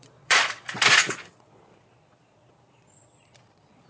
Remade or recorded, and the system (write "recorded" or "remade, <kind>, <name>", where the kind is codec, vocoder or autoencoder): remade, vocoder, Vocos